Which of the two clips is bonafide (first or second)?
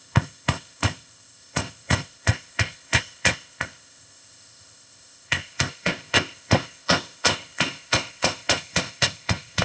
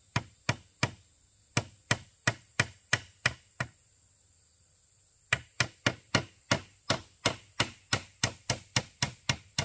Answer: second